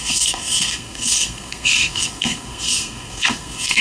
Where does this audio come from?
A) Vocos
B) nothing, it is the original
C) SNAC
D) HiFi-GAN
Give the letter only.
C